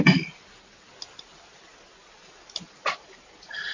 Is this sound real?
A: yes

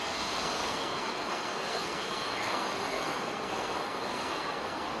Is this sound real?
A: no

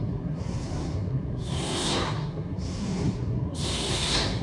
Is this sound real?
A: no